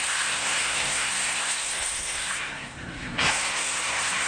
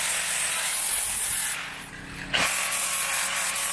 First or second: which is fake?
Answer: first